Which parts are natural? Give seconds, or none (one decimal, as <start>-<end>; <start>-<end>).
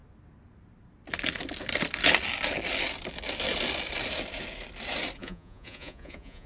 0.0-5.2